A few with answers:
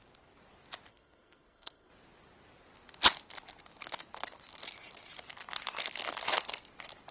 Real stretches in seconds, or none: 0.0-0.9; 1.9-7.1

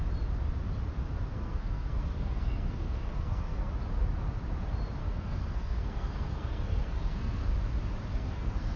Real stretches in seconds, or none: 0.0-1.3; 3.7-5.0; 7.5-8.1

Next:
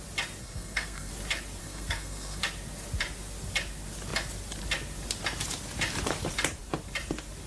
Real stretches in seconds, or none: 0.0-0.4; 1.1-1.6; 2.4-7.5